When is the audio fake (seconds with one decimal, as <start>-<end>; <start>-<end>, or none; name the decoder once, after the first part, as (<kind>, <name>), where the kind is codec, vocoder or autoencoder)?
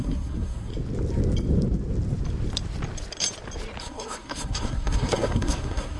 0.0-0.7 (codec, SNAC); 3.8-6.0